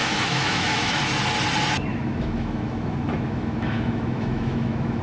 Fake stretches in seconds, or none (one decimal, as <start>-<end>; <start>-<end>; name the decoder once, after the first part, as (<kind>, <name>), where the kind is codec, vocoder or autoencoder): 0.0-1.0 (autoencoder, DAC-VAE); 1.9-5.0